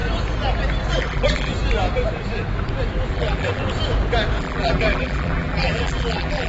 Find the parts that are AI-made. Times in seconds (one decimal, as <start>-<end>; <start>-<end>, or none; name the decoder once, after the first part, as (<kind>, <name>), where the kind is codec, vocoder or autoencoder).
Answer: 0.9-1.5 (vocoder, BigVGAN v2); 3.1-3.6; 4.4-6.5